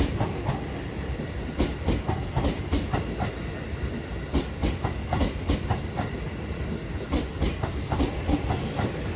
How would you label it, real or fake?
real